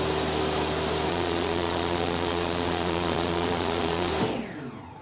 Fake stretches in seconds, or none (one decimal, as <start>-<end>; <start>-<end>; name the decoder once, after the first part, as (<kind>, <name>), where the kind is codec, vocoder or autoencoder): 1.1-4.1 (vocoder, Vocos)